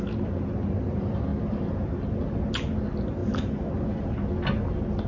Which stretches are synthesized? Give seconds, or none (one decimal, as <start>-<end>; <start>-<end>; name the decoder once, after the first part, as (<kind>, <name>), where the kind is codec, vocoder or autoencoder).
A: none